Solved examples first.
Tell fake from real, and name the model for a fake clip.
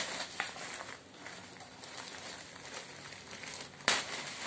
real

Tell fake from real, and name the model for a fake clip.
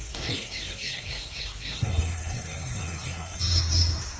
fake, codec, SNAC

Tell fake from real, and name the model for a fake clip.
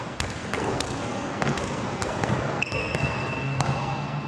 fake, codec, SNAC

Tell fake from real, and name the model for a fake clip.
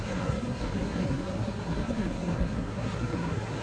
fake, codec, SNAC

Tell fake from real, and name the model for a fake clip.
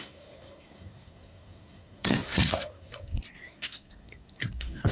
fake, codec, SNAC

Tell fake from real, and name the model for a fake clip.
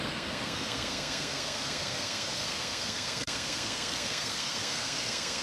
fake, codec, SNAC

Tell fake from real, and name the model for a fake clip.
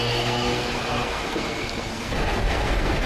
fake, codec, SNAC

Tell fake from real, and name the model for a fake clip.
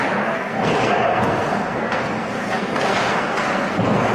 fake, codec, SNAC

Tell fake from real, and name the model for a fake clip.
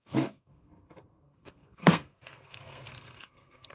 fake, codec, SNAC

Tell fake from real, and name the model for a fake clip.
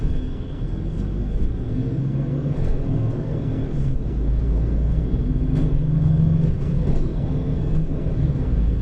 fake, codec, SNAC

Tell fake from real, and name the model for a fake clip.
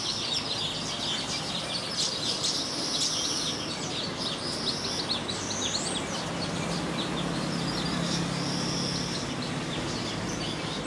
real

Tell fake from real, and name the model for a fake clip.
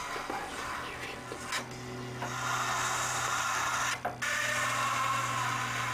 real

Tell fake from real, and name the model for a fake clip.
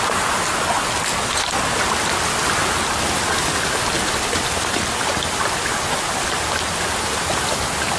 real